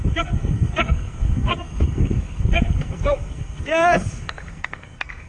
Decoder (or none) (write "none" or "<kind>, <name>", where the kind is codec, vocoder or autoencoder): codec, SNAC